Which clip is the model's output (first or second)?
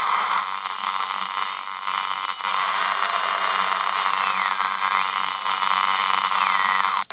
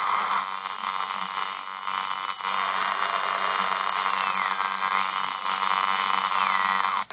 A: first